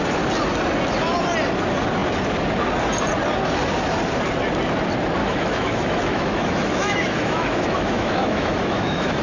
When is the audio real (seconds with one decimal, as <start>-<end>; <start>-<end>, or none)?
0.0-5.2